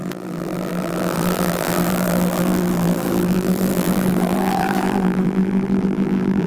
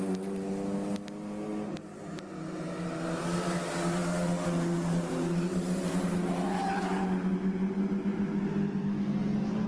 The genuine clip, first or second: second